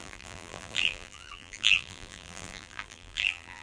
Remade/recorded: remade